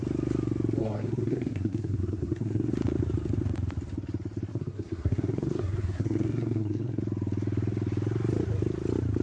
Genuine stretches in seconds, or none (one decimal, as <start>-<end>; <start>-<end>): 0.0-0.8; 2.7-4.5; 7.0-9.2